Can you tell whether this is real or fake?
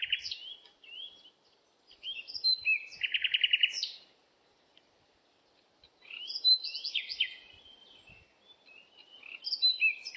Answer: real